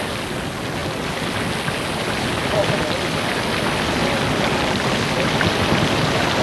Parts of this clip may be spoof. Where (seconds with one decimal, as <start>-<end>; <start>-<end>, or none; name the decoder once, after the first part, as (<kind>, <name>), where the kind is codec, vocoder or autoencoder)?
none